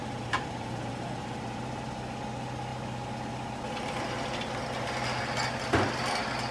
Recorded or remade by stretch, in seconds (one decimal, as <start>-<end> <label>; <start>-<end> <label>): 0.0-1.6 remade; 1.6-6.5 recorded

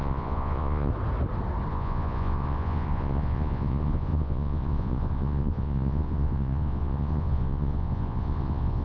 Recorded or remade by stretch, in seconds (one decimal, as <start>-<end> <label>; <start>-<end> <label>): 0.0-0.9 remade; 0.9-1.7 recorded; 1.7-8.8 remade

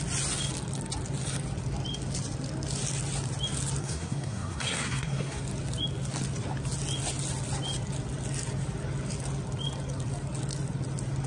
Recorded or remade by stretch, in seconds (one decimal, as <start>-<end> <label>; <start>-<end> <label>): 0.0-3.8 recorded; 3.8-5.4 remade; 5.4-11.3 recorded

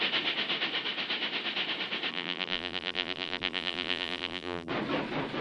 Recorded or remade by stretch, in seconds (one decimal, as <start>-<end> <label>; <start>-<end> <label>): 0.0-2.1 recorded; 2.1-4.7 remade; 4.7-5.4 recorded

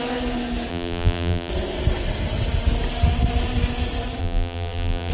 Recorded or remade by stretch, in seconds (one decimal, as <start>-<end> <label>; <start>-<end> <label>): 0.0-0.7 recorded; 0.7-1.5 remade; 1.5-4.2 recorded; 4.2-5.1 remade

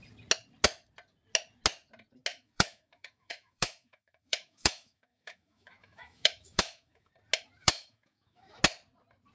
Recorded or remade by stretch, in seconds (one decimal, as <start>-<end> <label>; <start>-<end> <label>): 0.0-2.3 recorded; 2.3-7.1 remade; 7.1-7.6 recorded; 7.6-8.6 remade; 8.6-9.3 recorded

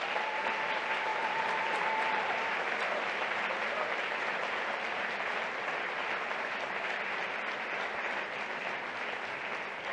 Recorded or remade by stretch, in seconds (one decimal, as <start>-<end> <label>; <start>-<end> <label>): 0.0-9.9 recorded

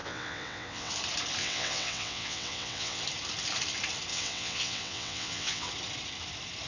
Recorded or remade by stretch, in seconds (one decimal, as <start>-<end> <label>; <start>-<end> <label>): 0.0-0.9 remade; 0.9-1.4 recorded; 1.4-3.0 remade; 3.0-4.1 recorded; 4.1-5.7 remade; 5.7-6.7 recorded